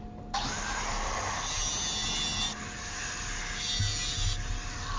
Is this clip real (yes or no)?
yes